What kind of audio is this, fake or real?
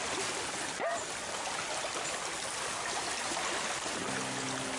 real